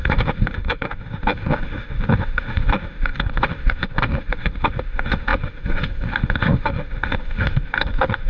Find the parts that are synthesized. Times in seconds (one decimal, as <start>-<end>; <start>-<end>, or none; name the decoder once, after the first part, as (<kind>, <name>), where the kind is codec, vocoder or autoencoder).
0.0-8.3 (autoencoder, DAC-VAE)